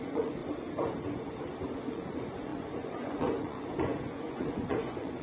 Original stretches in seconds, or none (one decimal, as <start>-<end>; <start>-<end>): 0.4-1.8